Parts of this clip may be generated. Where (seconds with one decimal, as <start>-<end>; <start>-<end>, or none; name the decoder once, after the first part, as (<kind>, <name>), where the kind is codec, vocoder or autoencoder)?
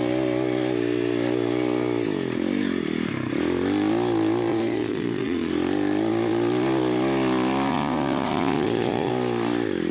4.5-5.5 (vocoder, Vocos); 7.7-9.1